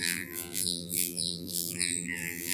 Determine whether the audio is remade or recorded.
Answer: remade